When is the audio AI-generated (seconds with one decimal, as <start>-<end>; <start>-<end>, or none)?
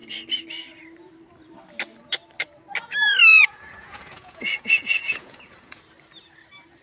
3.3-5.8